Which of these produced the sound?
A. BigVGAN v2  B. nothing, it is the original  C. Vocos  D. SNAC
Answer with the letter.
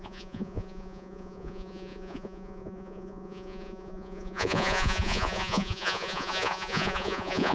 C